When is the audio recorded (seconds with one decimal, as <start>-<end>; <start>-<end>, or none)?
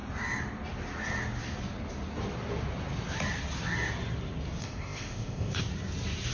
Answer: 0.0-4.6; 5.6-6.3